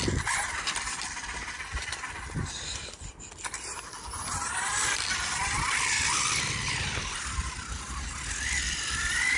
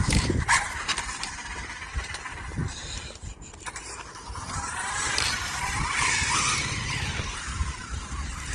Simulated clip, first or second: second